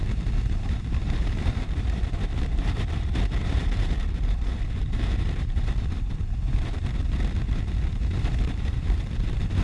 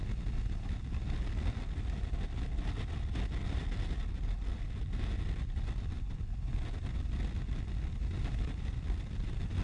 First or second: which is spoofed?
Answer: first